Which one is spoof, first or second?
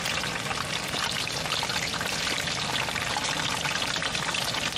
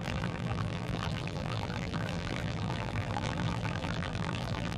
second